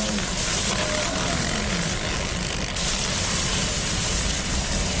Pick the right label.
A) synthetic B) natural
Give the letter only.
B